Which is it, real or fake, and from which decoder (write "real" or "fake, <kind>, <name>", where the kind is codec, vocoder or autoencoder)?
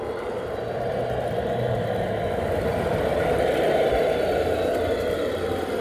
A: real